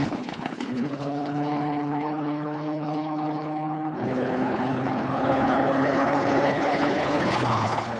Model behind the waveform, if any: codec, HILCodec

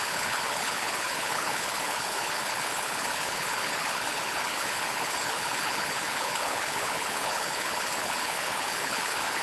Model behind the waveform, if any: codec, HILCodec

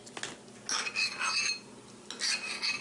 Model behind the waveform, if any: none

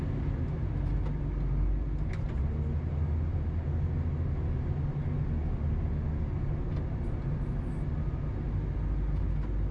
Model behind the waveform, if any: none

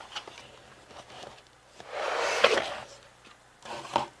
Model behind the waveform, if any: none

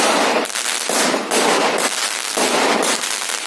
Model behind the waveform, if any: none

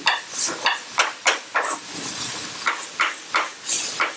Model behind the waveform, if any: none